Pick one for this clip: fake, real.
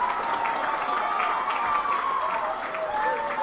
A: real